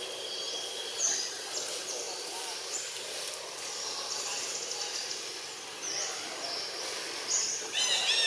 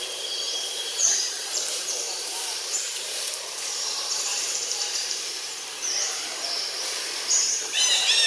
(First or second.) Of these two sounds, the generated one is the second